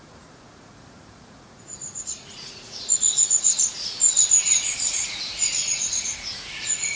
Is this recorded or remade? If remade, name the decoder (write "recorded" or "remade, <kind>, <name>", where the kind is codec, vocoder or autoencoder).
remade, vocoder, Vocos